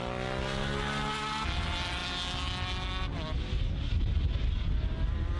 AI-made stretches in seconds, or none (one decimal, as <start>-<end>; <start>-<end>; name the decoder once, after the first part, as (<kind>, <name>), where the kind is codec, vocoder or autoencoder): none